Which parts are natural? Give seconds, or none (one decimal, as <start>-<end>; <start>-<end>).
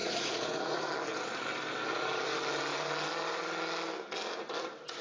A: 0.9-5.0